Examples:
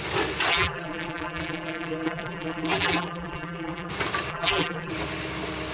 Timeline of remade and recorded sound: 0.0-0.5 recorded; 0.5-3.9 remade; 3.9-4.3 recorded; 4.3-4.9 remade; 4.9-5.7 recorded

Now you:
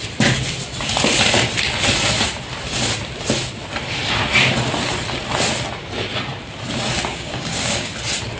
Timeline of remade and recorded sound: 0.0-7.1 recorded; 7.1-7.9 remade; 7.9-8.4 recorded